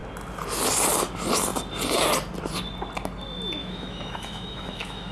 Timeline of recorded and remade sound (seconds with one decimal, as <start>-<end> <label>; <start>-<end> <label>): 0.0-3.6 recorded; 3.6-5.1 remade